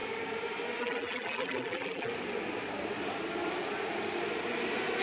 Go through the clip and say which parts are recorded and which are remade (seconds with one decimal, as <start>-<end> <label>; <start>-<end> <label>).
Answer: 0.0-0.8 recorded; 0.8-2.1 remade; 2.1-5.0 recorded